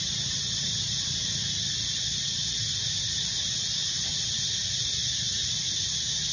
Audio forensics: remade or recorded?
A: recorded